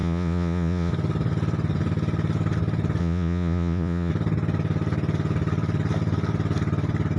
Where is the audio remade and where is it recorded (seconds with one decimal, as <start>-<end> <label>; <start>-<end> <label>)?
0.0-0.9 remade; 0.9-3.0 recorded; 3.0-4.1 remade; 4.1-7.2 recorded